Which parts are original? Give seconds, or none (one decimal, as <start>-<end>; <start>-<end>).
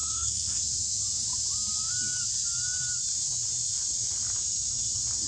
0.6-5.3